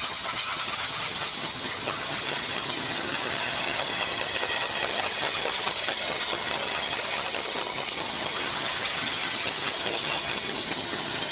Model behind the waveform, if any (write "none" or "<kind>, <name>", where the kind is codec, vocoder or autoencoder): vocoder, HiFi-GAN